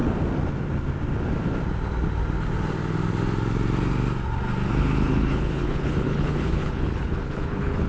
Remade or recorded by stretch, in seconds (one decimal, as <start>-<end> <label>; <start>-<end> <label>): 0.0-4.7 recorded; 4.7-7.9 remade